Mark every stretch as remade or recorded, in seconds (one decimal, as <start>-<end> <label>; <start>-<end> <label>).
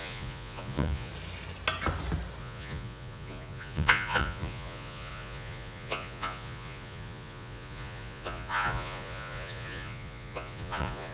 0.0-1.1 remade; 1.1-2.4 recorded; 2.4-11.1 remade